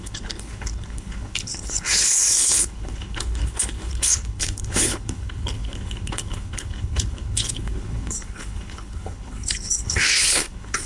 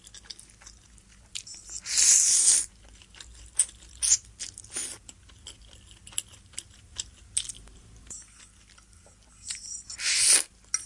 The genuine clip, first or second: second